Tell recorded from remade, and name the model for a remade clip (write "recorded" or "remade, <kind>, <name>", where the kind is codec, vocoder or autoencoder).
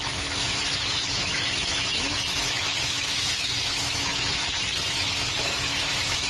remade, autoencoder, DAC-VAE